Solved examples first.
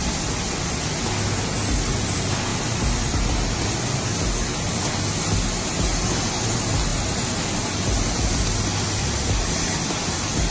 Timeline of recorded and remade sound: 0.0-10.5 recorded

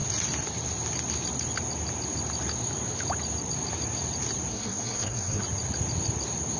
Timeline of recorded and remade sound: 0.0-4.5 recorded; 4.5-5.4 remade; 5.4-6.6 recorded

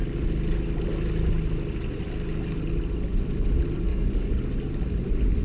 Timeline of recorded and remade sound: 0.0-3.9 recorded; 3.9-4.4 remade; 4.4-5.4 recorded

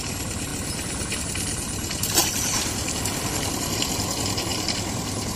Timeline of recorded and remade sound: 0.0-4.5 recorded; 4.5-5.4 remade

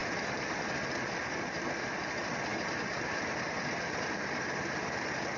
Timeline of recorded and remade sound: 0.0-5.4 recorded